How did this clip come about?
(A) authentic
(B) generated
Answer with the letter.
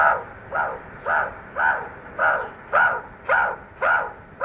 A